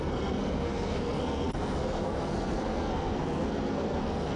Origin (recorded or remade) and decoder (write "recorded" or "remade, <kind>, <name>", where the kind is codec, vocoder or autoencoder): remade, codec, SNAC